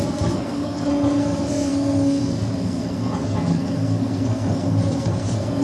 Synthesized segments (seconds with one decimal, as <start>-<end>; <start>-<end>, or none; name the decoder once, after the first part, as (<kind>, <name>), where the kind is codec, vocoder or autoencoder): 0.0-5.6 (codec, SNAC)